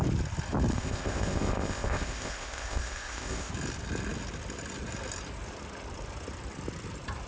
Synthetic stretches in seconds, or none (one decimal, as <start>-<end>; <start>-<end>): 0.7-3.5